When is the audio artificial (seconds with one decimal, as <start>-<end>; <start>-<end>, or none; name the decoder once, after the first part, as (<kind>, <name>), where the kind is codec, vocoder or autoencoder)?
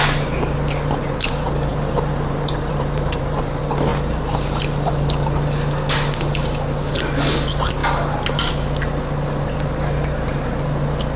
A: 1.7-3.4 (vocoder, BigVGAN v2); 3.9-4.9